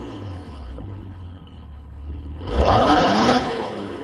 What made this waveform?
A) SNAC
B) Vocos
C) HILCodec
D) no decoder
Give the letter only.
C